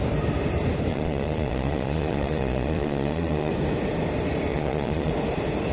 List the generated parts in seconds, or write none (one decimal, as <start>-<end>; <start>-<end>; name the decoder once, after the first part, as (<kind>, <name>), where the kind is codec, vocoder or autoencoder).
0.9-3.5 (vocoder, Vocos); 4.5-5.1